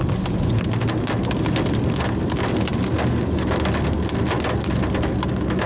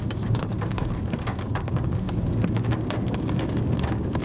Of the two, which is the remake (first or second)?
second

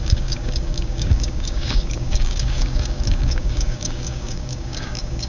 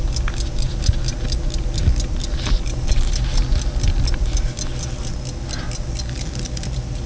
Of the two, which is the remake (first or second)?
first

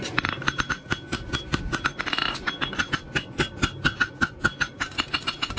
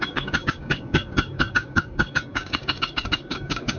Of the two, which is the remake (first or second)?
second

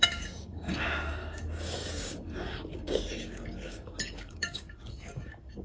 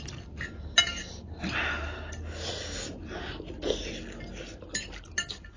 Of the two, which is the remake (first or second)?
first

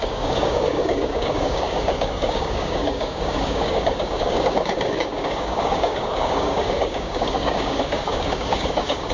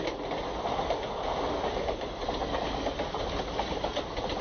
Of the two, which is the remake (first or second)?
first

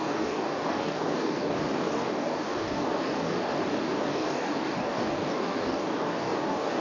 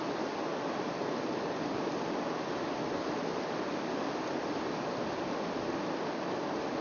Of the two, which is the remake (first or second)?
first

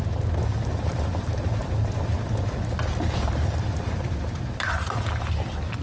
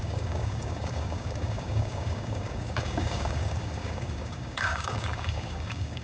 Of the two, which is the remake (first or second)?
second